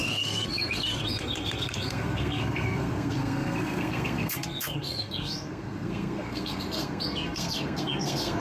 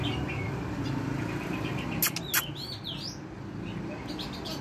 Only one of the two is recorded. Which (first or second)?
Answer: second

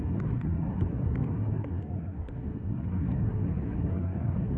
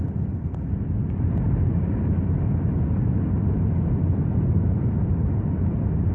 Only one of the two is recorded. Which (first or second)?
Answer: second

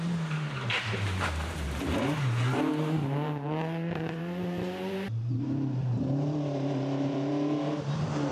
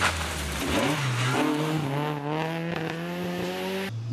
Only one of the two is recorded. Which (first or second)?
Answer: second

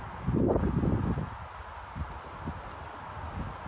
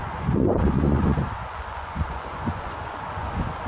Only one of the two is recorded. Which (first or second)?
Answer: first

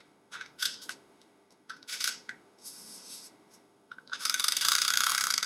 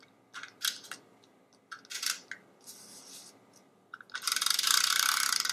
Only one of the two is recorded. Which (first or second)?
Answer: second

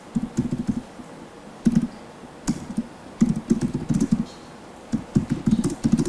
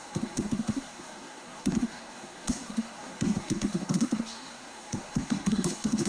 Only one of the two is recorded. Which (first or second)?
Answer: first